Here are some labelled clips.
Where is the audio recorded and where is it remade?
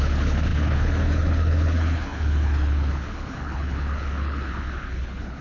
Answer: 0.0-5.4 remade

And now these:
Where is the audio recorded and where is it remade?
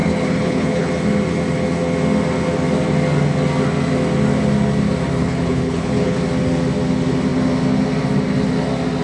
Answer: 0.0-0.9 remade; 0.9-5.2 recorded; 5.2-6.2 remade; 6.2-9.0 recorded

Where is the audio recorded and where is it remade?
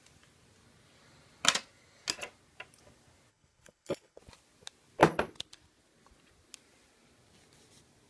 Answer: 0.0-3.3 recorded; 3.3-4.2 remade; 4.2-8.1 recorded